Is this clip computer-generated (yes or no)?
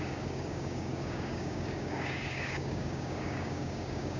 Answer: yes